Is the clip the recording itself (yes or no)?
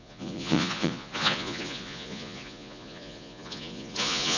no